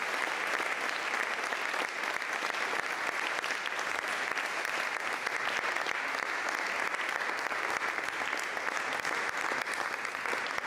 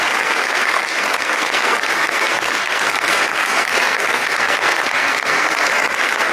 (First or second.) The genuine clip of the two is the first